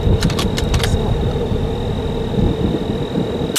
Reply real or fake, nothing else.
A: real